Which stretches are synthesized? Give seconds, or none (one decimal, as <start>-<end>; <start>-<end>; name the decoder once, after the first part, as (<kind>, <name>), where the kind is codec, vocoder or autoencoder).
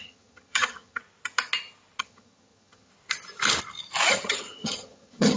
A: 0.0-1.0 (vocoder, HiFi-GAN); 2.0-2.9; 4.1-5.4